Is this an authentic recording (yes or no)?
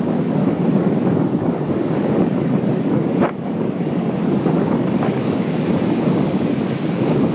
no